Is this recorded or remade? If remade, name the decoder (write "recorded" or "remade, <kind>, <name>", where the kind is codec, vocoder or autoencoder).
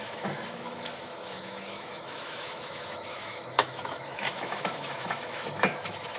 remade, autoencoder, DAC-VAE